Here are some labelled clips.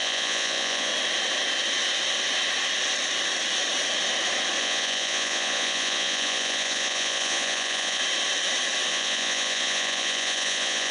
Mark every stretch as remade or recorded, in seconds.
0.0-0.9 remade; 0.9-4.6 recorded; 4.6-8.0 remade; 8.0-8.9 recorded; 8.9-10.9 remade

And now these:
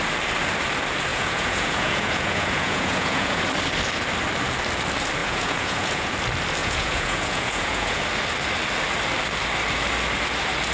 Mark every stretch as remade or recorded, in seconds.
0.0-1.1 recorded; 1.1-3.4 remade; 3.4-5.2 recorded; 5.2-6.1 remade; 6.1-6.6 recorded; 6.6-8.0 remade; 8.0-10.7 recorded

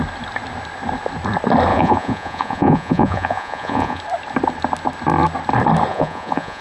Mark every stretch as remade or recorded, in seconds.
0.0-1.7 recorded; 1.7-4.0 remade; 4.0-5.9 recorded; 5.9-6.6 remade

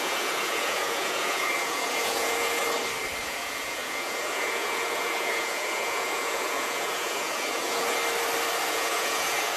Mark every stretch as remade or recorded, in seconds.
0.0-2.6 remade; 2.6-3.2 recorded; 3.2-8.0 remade; 8.0-8.7 recorded; 8.7-9.6 remade

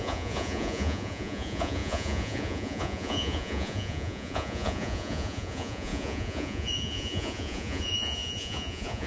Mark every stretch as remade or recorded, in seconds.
0.0-9.1 remade

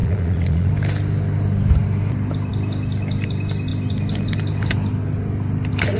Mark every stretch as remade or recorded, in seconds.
0.0-0.7 remade; 0.7-6.0 recorded

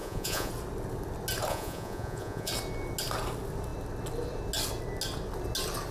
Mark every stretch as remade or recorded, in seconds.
0.0-0.5 remade; 0.5-1.5 recorded; 1.5-2.5 remade; 2.5-5.9 recorded

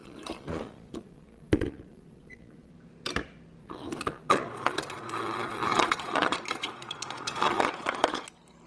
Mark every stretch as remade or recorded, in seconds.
0.0-2.7 remade; 2.7-3.6 recorded; 3.6-8.2 remade; 8.2-8.7 recorded